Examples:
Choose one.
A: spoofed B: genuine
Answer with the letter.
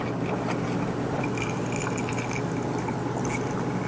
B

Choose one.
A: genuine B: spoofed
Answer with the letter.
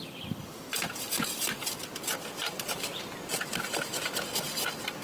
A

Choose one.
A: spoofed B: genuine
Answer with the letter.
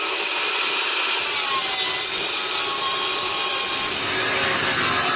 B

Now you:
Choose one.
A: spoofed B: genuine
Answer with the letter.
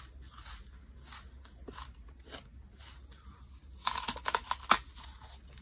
B